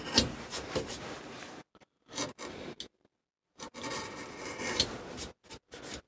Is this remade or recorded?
recorded